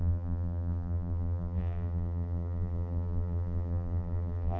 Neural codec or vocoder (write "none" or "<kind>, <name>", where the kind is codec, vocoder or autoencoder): vocoder, BigVGAN v2